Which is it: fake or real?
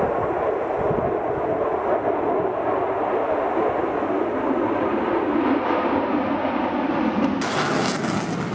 real